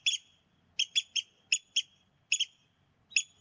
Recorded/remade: recorded